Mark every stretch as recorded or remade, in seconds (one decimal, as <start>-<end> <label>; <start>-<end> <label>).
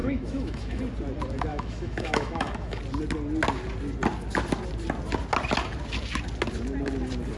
0.0-0.8 remade; 0.8-1.5 recorded; 1.5-2.8 remade; 2.8-7.4 recorded